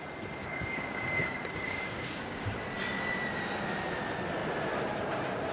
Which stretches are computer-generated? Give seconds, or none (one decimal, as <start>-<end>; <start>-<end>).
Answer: 0.4-2.5